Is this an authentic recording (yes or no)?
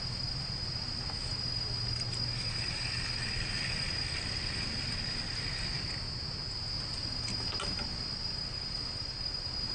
yes